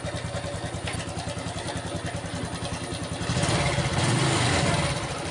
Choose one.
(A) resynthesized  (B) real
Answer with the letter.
B